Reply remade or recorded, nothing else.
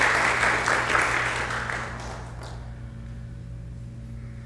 recorded